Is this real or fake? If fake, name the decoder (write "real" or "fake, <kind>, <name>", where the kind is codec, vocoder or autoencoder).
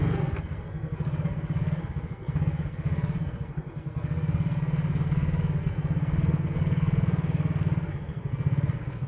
fake, codec, SNAC